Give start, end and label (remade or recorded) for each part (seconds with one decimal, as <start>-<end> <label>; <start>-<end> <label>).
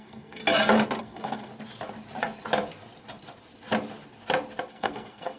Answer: 0.0-0.4 remade; 0.4-1.0 recorded; 1.0-1.5 remade; 1.5-4.7 recorded; 4.7-5.4 remade